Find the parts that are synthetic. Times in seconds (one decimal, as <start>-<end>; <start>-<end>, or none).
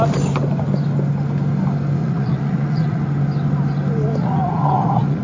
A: 2.0-3.0; 4.2-5.2